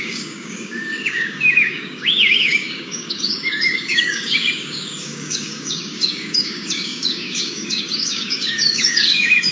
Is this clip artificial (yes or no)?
yes